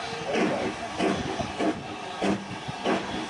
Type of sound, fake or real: real